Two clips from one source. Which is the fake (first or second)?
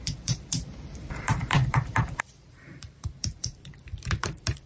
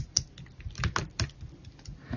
first